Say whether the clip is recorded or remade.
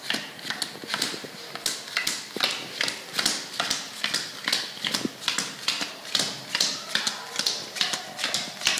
recorded